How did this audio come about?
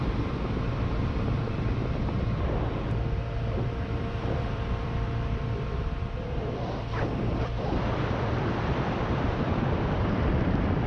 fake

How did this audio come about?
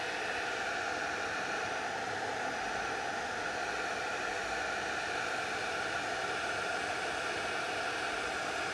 real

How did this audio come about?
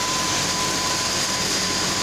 fake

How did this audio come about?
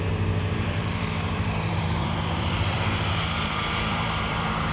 fake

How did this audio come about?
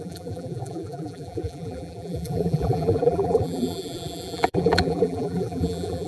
fake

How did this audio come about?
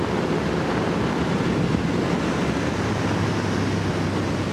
real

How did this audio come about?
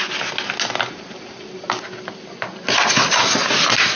real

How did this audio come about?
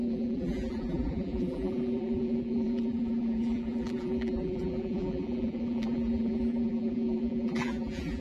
fake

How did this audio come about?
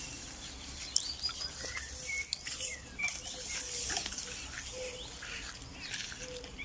real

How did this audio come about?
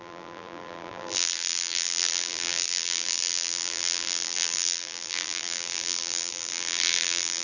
fake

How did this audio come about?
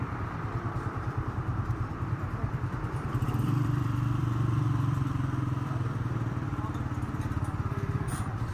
fake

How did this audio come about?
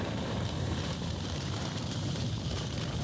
fake